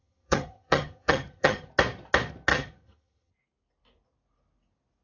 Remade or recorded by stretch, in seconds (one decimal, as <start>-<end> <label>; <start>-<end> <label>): 0.0-1.7 remade; 1.7-2.5 recorded; 2.5-3.3 remade; 3.3-5.0 recorded